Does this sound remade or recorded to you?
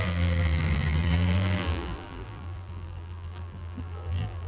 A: remade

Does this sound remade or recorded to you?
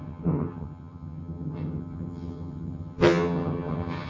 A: remade